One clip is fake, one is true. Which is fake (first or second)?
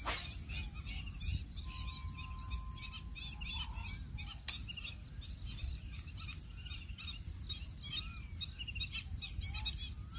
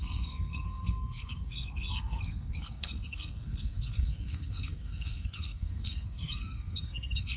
second